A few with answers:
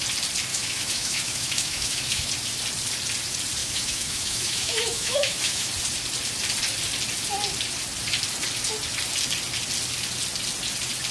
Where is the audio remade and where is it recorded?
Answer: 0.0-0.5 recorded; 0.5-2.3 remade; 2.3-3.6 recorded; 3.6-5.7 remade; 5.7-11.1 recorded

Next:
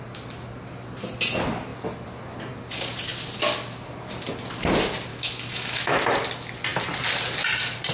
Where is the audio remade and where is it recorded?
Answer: 0.0-5.1 recorded; 5.1-6.0 remade; 6.0-7.9 recorded

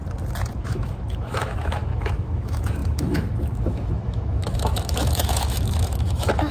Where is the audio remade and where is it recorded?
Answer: 0.0-0.6 recorded; 0.6-6.5 remade

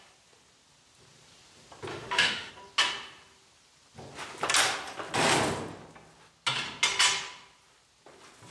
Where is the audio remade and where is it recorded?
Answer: 0.0-1.9 recorded; 1.9-2.5 remade; 2.5-8.5 recorded

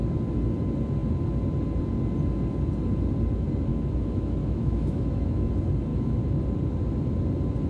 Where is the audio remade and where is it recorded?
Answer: 0.0-3.7 recorded; 3.7-5.5 remade; 5.5-5.9 recorded; 5.9-6.4 remade; 6.4-7.7 recorded